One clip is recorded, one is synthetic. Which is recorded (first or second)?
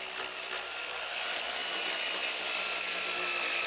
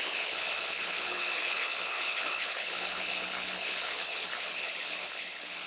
first